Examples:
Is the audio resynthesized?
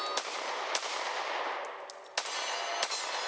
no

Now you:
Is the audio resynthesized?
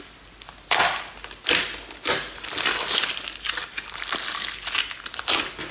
no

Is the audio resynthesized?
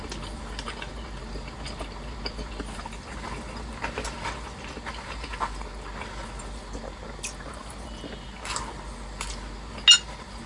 no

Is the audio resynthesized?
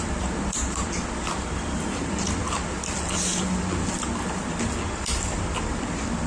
no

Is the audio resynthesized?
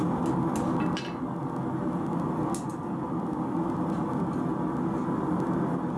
no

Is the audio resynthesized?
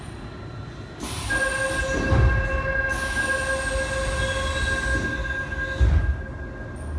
no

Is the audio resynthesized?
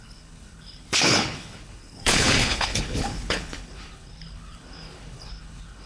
yes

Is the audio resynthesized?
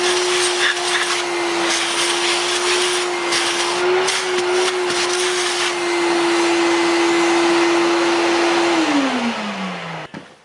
no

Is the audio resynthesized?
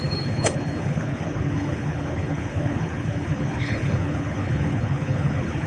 yes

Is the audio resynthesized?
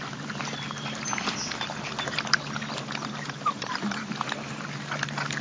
no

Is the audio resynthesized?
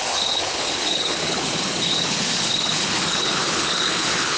yes